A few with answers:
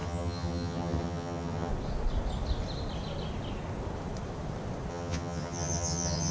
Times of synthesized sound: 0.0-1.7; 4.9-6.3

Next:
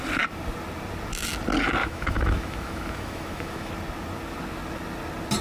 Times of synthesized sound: 1.8-3.7

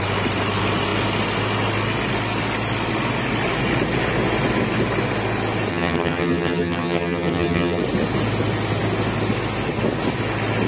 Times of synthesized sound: 5.7-7.8

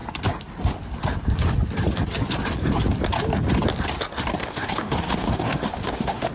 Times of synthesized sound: 4.4-6.3

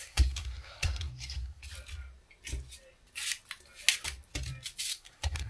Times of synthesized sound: 0.0-1.6; 4.9-5.5

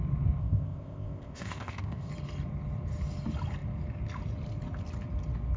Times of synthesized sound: 0.4-2.1

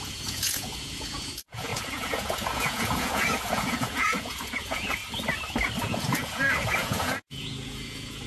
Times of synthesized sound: 0.0-5.0; 5.8-8.3